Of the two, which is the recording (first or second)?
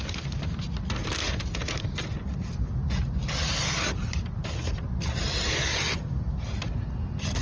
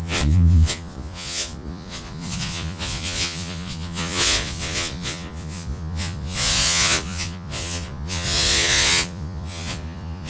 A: first